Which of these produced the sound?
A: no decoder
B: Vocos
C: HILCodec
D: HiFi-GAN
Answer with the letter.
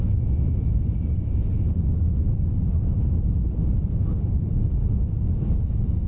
A